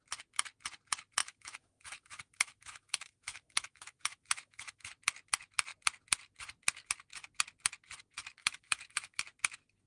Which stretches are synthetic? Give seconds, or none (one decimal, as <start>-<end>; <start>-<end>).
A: 1.2-4.9; 8.4-9.2